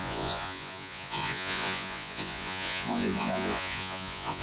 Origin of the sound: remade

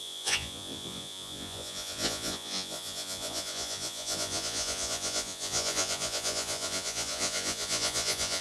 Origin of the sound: remade